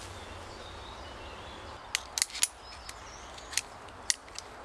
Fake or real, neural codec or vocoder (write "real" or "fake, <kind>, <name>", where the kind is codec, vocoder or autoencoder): real